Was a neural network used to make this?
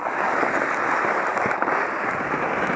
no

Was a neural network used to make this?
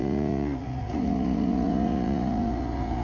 yes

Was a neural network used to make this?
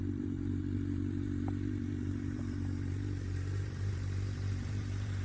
yes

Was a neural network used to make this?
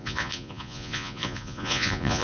yes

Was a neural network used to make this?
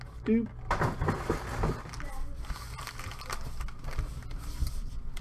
no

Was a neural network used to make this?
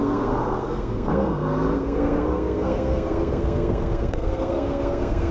yes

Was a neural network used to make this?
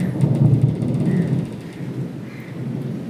no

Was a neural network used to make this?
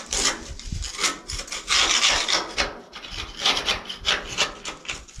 no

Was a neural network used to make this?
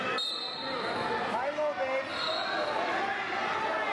no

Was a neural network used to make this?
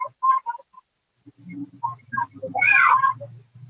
no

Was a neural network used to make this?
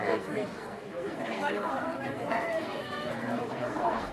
yes